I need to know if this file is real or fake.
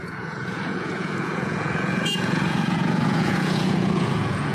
fake